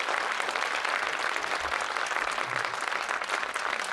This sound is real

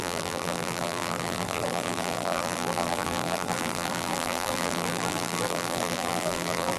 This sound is fake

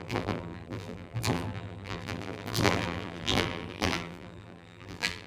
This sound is fake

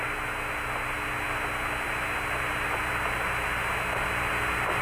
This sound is real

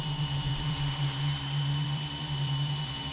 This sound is fake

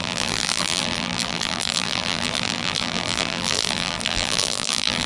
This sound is fake